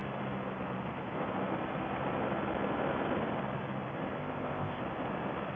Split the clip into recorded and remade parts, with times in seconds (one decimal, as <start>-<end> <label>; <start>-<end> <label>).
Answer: 0.0-4.2 recorded; 4.2-4.8 remade; 4.8-5.6 recorded